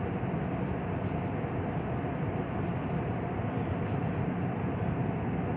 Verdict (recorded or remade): recorded